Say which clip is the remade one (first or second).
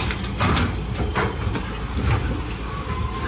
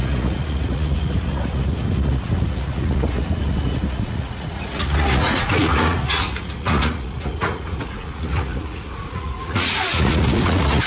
second